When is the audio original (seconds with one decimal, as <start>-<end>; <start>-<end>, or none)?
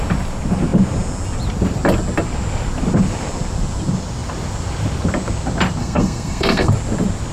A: 0.0-5.8; 6.7-7.3